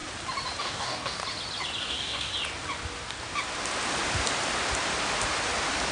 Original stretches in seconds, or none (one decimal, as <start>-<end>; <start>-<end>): 0.0-0.6; 1.2-1.8; 2.3-5.9